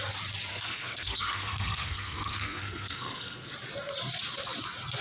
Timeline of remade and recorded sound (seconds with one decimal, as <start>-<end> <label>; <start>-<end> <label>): 0.0-0.5 recorded; 0.5-3.5 remade; 3.5-5.0 recorded